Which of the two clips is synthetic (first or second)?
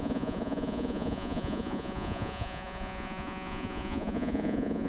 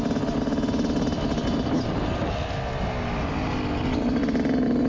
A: first